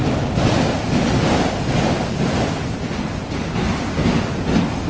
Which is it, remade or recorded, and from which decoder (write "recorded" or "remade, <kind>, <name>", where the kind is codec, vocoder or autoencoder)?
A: recorded